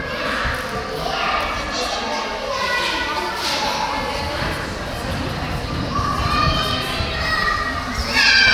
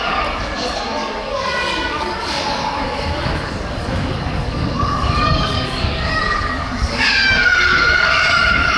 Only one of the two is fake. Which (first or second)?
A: second